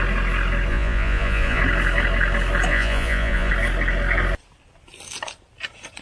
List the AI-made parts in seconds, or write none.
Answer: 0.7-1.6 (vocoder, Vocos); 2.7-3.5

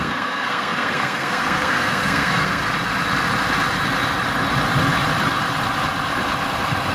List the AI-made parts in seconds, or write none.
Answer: 0.0-2.6 (codec, SNAC)

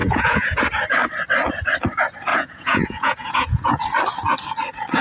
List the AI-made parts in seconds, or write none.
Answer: 0.0-0.6 (vocoder, Vocos); 2.3-3.8

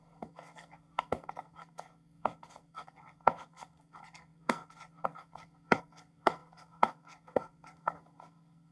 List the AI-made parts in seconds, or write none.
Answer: 0.0-8.7 (codec, SNAC)

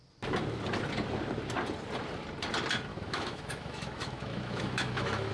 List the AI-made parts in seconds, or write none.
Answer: 2.9-5.3 (autoencoder, DAC-VAE)

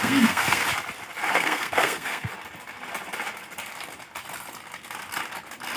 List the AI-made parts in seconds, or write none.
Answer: 0.0-0.6 (codec, SNAC); 1.3-2.3